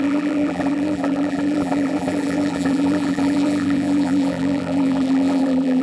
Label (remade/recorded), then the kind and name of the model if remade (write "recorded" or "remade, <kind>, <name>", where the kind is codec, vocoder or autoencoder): remade, vocoder, BigVGAN v2